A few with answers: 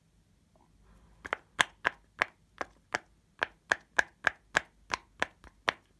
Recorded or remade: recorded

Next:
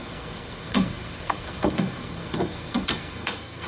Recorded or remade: remade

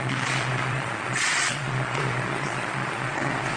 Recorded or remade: remade